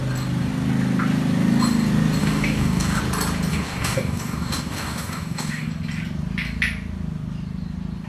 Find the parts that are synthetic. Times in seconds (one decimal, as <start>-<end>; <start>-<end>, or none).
2.2-3.0; 3.5-5.7

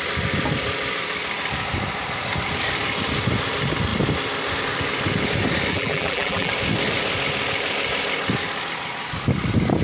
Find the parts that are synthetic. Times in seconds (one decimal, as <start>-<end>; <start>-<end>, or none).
5.7-6.5

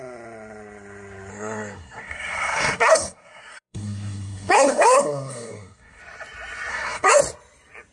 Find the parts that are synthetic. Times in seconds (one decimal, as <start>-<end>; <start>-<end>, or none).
1.3-6.0; 6.7-7.2

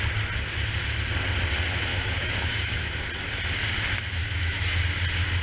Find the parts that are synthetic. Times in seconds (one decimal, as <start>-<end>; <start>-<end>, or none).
1.9-2.8; 4.2-4.8

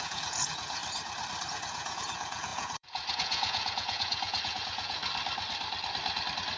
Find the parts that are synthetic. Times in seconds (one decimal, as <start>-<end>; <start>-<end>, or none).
0.0-0.8; 1.5-5.0

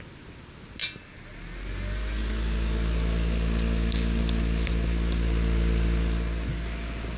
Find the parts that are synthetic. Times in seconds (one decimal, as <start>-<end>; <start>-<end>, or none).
none